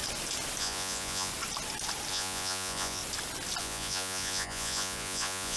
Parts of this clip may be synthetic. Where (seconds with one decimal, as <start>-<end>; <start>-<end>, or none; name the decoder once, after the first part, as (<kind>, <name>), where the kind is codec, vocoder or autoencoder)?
0.6-1.3 (vocoder, Vocos); 2.1-3.0; 3.6-5.6